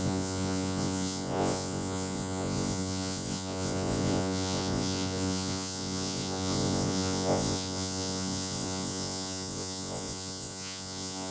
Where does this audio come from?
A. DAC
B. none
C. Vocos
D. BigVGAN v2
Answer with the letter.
C